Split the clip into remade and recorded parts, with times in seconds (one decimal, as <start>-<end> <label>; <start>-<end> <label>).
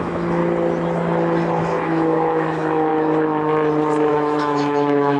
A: 0.0-0.4 remade; 0.4-1.6 recorded; 1.6-2.9 remade; 2.9-4.1 recorded; 4.1-5.2 remade